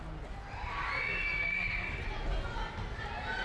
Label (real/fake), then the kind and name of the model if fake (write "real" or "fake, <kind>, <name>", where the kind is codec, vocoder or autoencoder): real